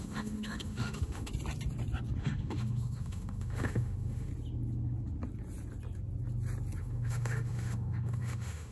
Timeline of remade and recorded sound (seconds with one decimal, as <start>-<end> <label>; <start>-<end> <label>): 0.0-1.3 remade; 1.3-2.2 recorded; 2.2-4.3 remade; 4.3-6.8 recorded; 6.8-8.7 remade